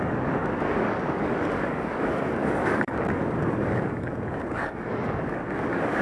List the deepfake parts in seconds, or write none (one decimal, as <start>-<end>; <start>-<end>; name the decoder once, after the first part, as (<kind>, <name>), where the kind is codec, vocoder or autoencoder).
0.0-6.0 (codec, DAC)